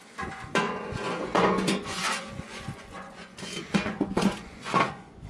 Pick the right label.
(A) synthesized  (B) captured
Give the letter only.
A